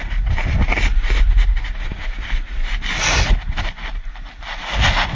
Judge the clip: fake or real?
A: real